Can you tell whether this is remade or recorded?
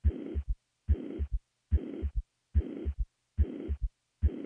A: recorded